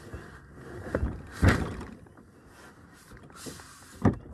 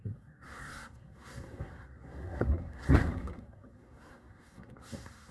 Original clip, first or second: first